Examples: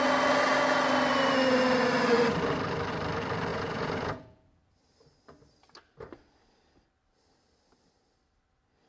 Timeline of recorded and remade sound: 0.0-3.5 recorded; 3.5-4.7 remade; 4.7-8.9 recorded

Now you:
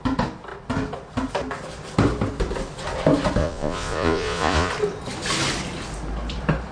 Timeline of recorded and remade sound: 0.0-3.4 recorded; 3.4-4.7 remade; 4.7-6.7 recorded

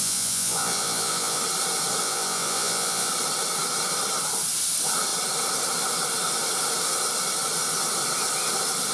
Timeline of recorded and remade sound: 0.0-1.4 remade; 1.4-2.0 recorded; 2.0-3.1 remade; 3.1-8.9 recorded

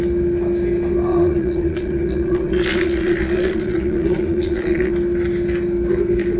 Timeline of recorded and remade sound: 0.0-1.1 recorded; 1.1-4.9 remade; 4.9-6.4 recorded

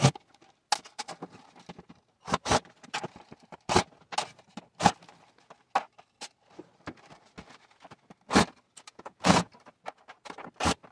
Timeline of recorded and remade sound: 0.0-8.9 recorded; 8.9-9.5 remade; 9.5-10.9 recorded

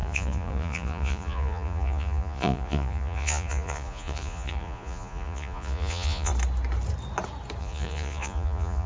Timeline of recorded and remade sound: 0.0-6.3 remade; 6.3-7.6 recorded; 7.6-8.9 remade

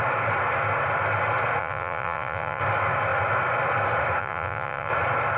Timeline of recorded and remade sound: 0.0-1.6 recorded; 1.6-2.6 remade; 2.6-4.2 recorded; 4.2-4.9 remade; 4.9-5.4 recorded